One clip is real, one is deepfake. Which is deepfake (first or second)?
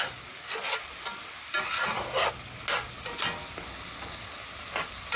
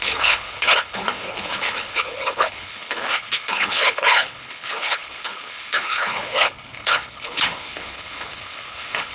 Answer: second